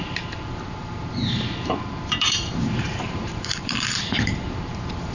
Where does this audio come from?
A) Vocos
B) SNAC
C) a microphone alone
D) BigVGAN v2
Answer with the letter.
D